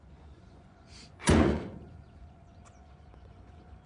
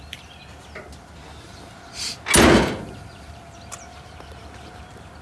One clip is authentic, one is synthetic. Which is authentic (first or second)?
second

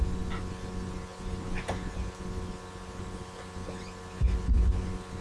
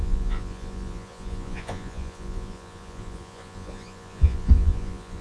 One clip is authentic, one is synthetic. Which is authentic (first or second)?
first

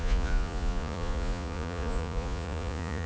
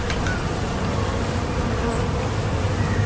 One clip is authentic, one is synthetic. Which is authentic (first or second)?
second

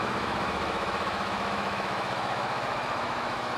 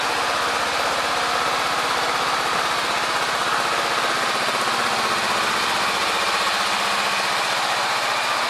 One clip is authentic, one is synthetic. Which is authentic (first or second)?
second